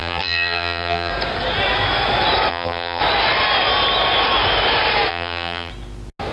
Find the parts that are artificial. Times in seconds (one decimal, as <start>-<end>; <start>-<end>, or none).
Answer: 0.0-1.1; 2.5-3.0; 5.1-5.7